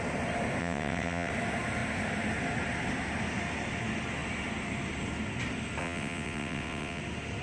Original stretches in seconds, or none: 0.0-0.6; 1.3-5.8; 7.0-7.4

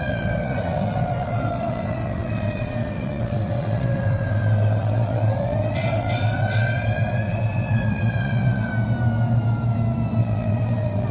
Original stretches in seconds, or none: 8.7-10.2

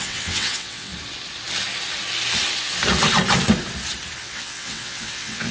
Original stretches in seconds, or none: 0.9-4.2